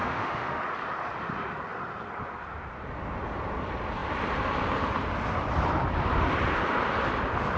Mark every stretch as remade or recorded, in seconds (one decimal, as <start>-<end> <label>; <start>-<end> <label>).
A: 0.0-0.6 remade; 0.6-7.6 recorded